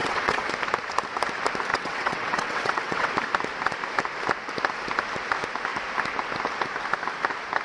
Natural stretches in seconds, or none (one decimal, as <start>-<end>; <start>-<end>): 0.5-1.7; 3.1-7.6